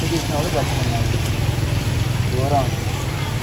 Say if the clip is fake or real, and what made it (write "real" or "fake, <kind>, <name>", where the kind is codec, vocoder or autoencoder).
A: real